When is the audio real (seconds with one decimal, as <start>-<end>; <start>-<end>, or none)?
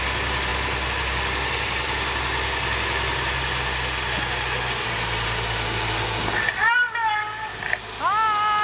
0.0-8.6